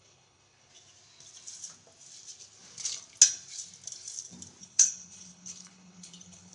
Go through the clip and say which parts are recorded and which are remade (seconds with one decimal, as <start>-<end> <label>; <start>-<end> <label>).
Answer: 0.0-0.7 remade; 0.7-4.6 recorded; 4.6-6.5 remade